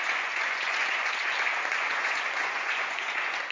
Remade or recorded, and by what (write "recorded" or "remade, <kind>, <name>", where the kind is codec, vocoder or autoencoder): remade, vocoder, Vocos